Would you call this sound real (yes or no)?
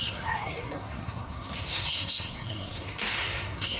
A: no